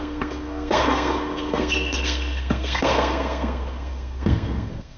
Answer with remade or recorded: remade